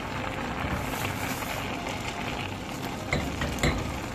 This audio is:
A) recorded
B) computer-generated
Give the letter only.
A